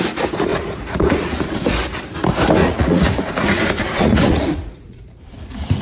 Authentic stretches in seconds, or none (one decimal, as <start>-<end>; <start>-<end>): 0.0-0.5; 1.6-2.6; 5.0-5.8